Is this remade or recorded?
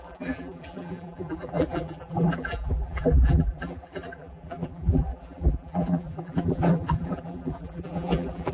remade